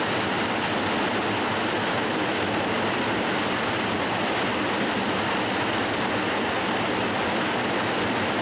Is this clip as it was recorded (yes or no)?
yes